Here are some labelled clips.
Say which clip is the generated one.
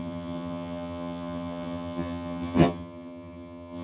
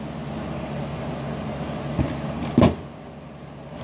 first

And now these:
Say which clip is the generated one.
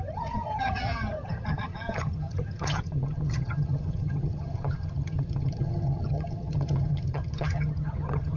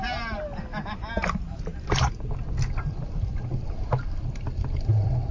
first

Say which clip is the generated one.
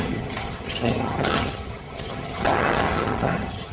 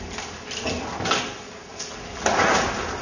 first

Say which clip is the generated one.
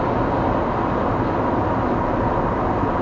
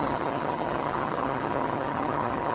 second